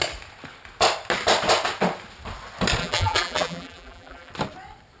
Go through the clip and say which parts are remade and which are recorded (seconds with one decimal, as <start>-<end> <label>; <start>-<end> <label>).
0.0-2.8 recorded; 2.8-4.3 remade; 4.3-5.0 recorded